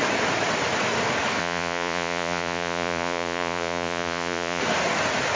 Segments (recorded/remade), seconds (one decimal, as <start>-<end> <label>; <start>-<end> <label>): 0.0-1.4 recorded; 1.4-4.6 remade; 4.6-5.4 recorded